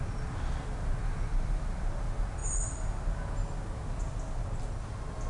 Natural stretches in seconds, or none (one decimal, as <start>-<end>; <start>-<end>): 0.0-5.3